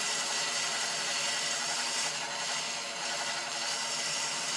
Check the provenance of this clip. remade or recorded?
remade